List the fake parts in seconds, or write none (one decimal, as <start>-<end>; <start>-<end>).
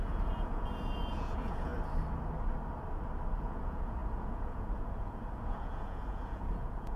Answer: 0.0-1.7; 3.4-7.0